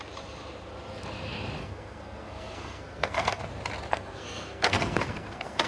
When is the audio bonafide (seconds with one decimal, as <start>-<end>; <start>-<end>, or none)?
0.0-1.6; 3.5-3.9